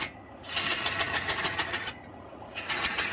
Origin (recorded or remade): remade